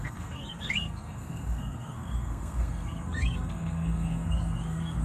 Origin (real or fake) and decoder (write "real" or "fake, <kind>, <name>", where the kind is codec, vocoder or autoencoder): fake, codec, SNAC